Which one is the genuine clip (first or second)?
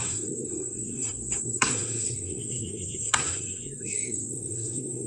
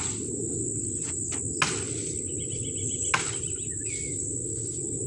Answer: second